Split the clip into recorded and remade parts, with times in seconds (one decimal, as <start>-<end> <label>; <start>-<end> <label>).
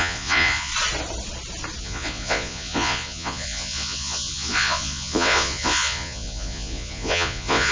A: 0.0-0.7 remade; 0.7-1.8 recorded; 1.8-7.7 remade